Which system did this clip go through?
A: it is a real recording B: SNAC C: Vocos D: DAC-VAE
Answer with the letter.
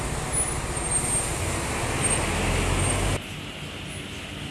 A